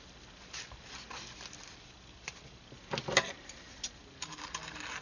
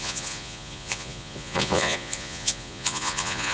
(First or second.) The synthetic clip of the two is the second